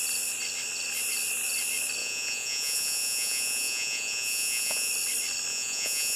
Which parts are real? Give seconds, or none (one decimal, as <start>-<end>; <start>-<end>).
0.0-2.0; 4.9-5.5